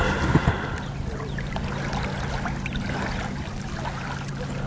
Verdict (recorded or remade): recorded